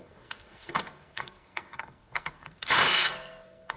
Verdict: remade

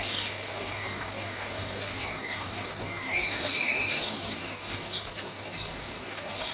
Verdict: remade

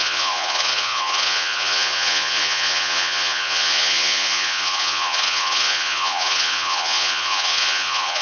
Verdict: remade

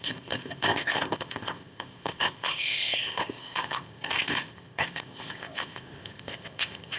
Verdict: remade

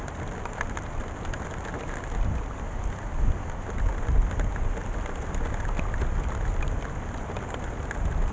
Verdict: recorded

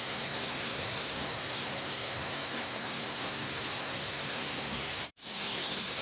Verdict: remade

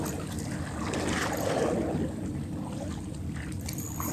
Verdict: recorded